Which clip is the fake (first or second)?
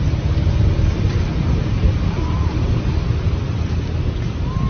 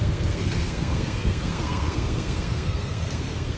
second